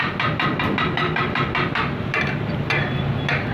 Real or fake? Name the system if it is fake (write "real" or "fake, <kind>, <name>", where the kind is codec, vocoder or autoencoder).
real